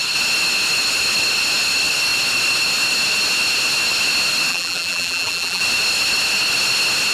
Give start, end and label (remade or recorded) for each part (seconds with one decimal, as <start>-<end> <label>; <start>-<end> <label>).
0.0-4.5 recorded; 4.5-5.6 remade; 5.6-7.1 recorded